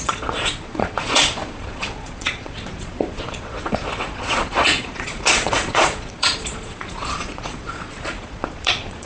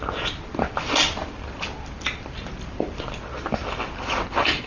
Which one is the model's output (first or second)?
first